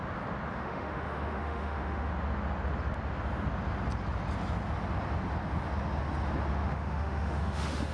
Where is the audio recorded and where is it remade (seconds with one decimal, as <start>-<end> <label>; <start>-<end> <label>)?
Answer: 0.0-0.5 recorded; 0.5-2.1 remade; 2.1-6.5 recorded; 6.5-7.9 remade